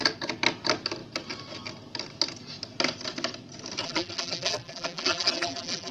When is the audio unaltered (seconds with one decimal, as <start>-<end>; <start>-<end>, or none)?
0.0-3.8